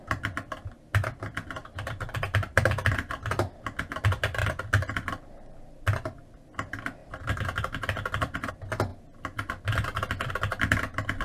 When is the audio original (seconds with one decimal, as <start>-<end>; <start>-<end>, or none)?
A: 0.0-1.6; 2.6-4.4; 5.3-7.0; 8.5-11.2